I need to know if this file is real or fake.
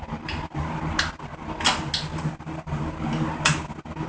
real